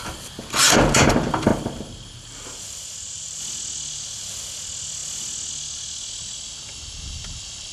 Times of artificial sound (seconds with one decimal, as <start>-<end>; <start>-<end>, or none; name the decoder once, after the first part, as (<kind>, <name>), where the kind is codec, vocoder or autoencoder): 1.5-3.4 (vocoder, BigVGAN v2)